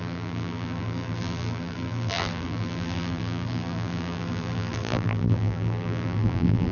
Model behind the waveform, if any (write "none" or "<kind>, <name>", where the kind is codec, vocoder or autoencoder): vocoder, BigVGAN v2